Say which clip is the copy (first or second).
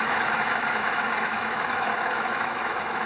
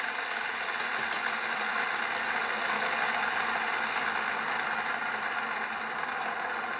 first